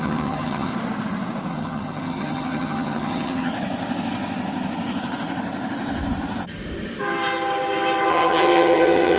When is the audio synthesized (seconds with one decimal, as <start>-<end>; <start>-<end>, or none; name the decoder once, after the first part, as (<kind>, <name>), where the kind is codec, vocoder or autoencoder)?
0.0-0.7 (vocoder, HiFi-GAN); 1.5-3.5; 8.1-9.2